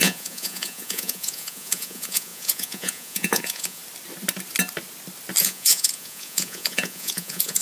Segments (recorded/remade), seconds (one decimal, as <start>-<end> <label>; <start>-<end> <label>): 0.0-3.8 remade; 3.8-5.4 recorded; 5.4-7.6 remade